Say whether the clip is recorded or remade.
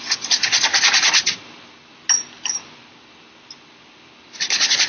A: recorded